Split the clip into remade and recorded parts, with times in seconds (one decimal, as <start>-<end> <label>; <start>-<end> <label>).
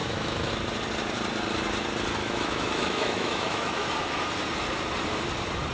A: 0.0-0.5 remade; 0.5-2.2 recorded; 2.2-3.9 remade; 3.9-5.7 recorded